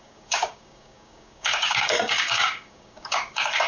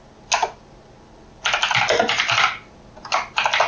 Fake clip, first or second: first